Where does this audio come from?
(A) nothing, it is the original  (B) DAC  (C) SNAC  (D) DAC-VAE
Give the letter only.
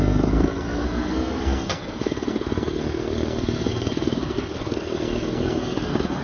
C